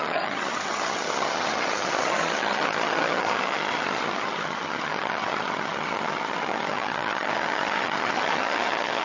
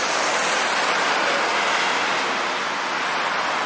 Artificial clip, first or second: first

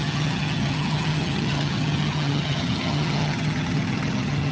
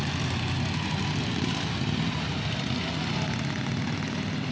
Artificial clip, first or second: first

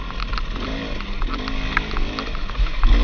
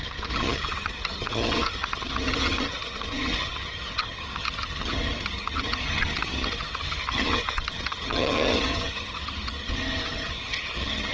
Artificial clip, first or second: second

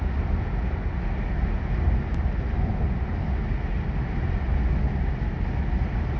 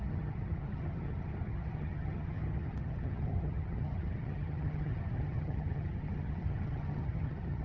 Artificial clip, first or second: second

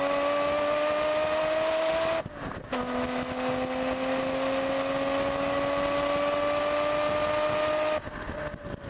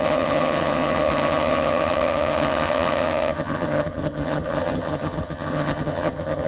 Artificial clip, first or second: second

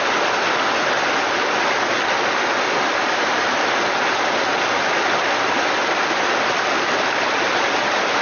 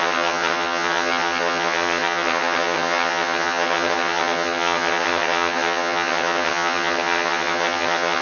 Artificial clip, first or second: second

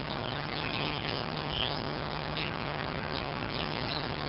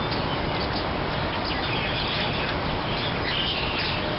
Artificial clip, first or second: first